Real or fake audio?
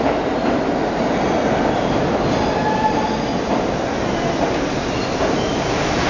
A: real